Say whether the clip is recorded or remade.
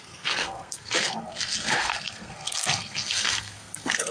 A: remade